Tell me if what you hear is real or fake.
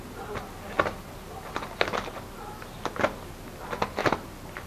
real